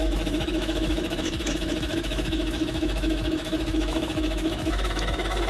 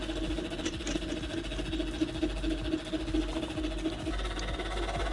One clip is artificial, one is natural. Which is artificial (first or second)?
first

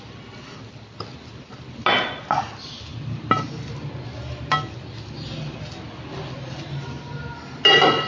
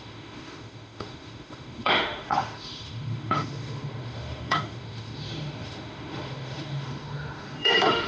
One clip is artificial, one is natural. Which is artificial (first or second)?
second